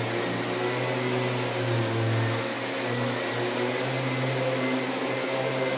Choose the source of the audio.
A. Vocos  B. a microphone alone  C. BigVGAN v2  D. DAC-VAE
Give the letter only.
B